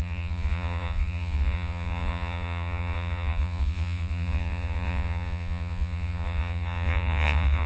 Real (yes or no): no